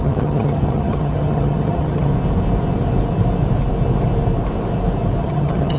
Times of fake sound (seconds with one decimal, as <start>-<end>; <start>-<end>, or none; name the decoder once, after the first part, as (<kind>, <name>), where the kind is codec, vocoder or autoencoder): 0.0-2.1 (vocoder, HiFi-GAN); 5.2-5.8